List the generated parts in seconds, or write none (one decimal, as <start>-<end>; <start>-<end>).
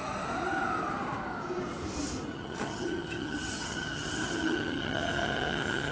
2.3-5.9